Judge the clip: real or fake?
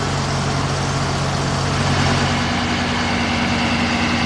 real